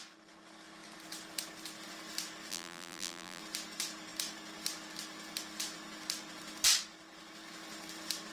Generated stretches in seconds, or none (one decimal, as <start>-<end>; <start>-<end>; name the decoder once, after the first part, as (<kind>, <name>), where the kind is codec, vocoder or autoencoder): 2.5-3.4 (vocoder, BigVGAN v2)